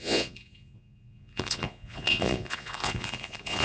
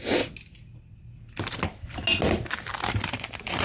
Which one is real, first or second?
second